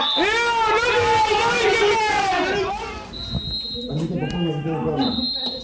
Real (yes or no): yes